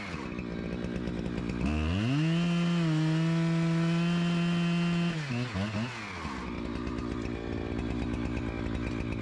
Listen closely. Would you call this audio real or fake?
real